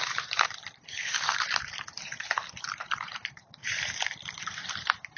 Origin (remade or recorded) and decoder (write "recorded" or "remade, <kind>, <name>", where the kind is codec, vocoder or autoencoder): remade, vocoder, BigVGAN v2